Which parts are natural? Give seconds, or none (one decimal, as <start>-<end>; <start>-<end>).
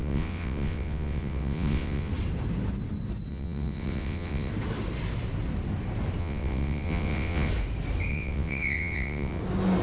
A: 2.1-3.3; 4.5-6.2; 7.5-8.1; 9.4-9.8